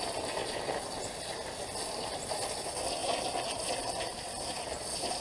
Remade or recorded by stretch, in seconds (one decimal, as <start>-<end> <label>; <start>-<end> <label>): 0.0-5.2 remade